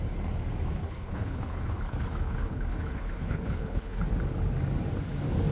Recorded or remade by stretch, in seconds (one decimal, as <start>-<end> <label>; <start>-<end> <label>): 0.0-0.8 recorded; 0.8-4.1 remade; 4.1-5.5 recorded